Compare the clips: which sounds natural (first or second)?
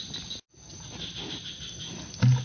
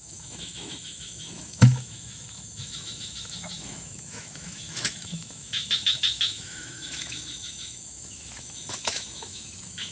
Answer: first